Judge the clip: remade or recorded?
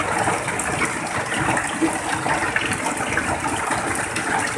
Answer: recorded